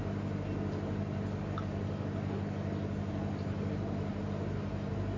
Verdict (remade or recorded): recorded